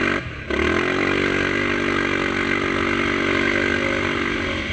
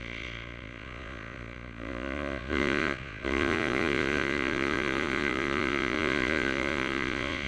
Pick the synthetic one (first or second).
second